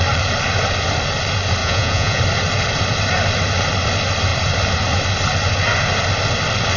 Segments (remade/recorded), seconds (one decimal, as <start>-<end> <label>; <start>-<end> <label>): 0.0-1.6 recorded; 1.6-2.2 remade; 2.2-6.8 recorded